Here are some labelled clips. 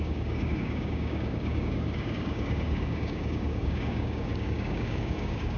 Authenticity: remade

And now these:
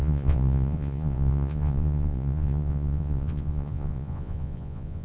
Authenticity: remade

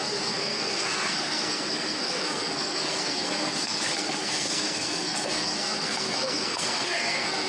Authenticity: remade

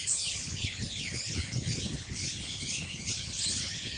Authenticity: remade